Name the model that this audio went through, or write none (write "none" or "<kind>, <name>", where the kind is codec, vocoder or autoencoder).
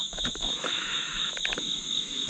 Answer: autoencoder, DAC-VAE